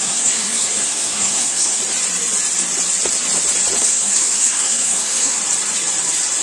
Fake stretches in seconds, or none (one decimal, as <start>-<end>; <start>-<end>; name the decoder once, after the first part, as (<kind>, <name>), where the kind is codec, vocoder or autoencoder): 0.0-1.8 (codec, SNAC); 3.8-5.4